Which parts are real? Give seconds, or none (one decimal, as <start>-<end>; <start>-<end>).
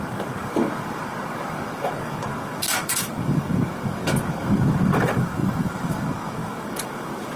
none